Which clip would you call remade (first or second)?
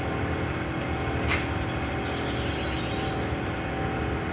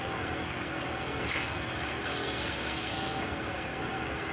second